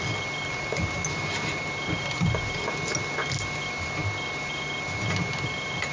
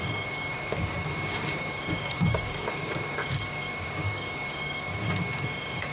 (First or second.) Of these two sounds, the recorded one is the first